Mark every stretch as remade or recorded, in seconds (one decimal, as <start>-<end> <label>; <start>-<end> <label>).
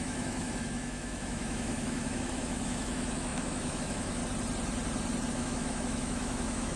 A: 0.0-4.2 remade; 4.2-5.3 recorded; 5.3-6.8 remade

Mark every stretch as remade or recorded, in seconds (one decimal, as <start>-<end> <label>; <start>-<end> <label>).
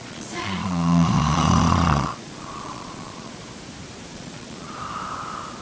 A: 0.0-3.4 remade; 3.4-4.1 recorded; 4.1-4.8 remade; 4.8-5.6 recorded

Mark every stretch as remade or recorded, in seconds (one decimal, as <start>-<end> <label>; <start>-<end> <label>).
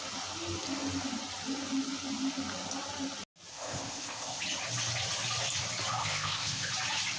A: 0.0-3.5 recorded; 3.5-4.4 remade; 4.4-6.0 recorded; 6.0-6.7 remade; 6.7-7.2 recorded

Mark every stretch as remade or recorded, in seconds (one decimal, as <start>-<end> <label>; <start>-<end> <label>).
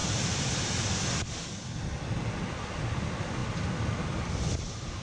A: 0.0-5.0 recorded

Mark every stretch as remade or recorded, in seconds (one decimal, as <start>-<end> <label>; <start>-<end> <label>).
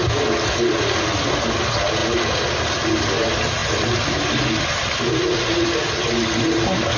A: 0.0-7.0 recorded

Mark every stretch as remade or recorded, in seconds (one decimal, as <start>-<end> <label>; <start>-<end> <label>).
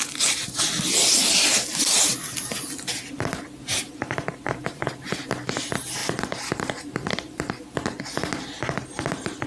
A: 0.0-6.0 recorded; 6.0-7.6 remade; 7.6-9.5 recorded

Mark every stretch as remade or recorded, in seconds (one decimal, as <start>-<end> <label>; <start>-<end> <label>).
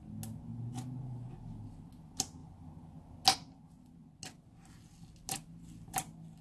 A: 0.0-6.4 recorded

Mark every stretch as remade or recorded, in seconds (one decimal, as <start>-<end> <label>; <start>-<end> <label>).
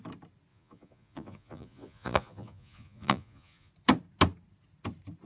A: 0.0-0.5 recorded; 0.5-3.7 remade; 3.7-5.3 recorded